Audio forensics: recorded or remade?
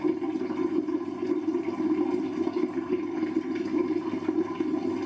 recorded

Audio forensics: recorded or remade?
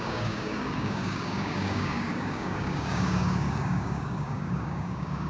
remade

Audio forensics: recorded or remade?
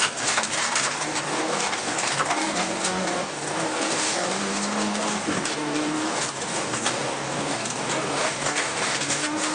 remade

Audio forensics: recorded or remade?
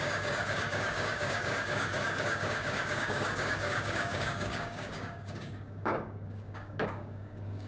remade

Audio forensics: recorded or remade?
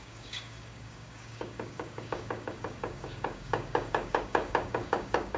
remade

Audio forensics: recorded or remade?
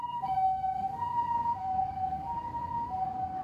remade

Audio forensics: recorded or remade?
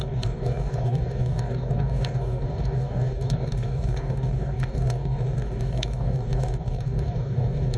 remade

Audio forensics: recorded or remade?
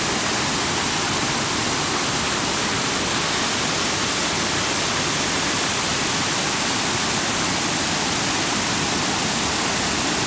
recorded